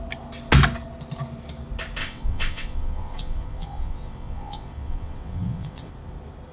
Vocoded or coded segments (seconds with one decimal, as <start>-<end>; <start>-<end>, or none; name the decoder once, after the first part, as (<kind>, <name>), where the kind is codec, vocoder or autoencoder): 2.0-5.9 (vocoder, WaveNeXt)